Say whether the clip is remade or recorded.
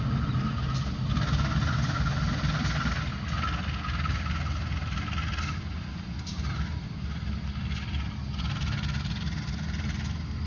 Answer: recorded